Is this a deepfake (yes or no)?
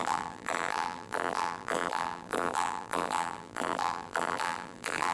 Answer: yes